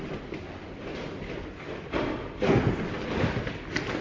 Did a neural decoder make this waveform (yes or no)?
no